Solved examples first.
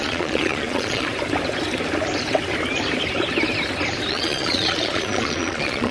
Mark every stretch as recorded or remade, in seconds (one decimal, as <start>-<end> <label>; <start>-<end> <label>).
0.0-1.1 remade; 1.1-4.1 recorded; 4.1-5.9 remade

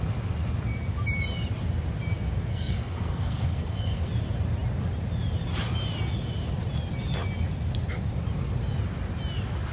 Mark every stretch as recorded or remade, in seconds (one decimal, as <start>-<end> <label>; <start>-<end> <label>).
0.0-2.5 recorded; 2.5-4.1 remade; 4.1-9.7 recorded

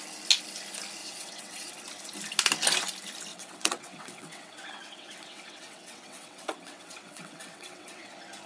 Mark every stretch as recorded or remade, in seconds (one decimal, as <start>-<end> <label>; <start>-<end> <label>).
0.0-1.0 recorded; 1.0-1.7 remade; 1.7-3.3 recorded; 3.3-8.1 remade; 8.1-8.5 recorded

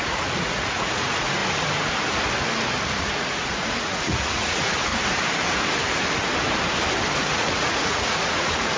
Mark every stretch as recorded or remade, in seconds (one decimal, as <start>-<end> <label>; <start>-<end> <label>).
0.0-1.4 remade; 1.4-3.0 recorded; 3.0-4.9 remade; 4.9-7.1 recorded; 7.1-8.8 remade

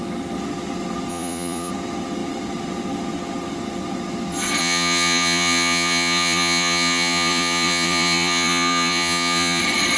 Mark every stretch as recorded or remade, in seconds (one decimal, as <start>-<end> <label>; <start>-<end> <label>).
0.0-1.1 recorded; 1.1-1.7 remade; 1.7-4.6 recorded; 4.6-9.6 remade; 9.6-10.0 recorded

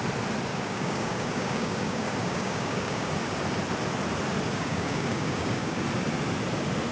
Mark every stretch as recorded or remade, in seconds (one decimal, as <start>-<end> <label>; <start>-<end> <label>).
0.0-0.5 recorded; 0.5-3.1 remade; 3.1-4.5 recorded; 4.5-5.8 remade; 5.8-6.9 recorded

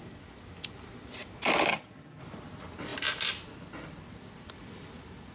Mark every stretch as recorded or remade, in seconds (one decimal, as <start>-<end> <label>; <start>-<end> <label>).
0.0-1.7 recorded; 1.7-2.2 remade; 2.2-5.3 recorded